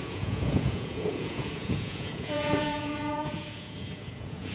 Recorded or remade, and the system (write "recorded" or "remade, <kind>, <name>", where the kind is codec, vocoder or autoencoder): remade, vocoder, Vocos